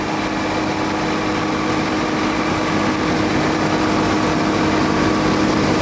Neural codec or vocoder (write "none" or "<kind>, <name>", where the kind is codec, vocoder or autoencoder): none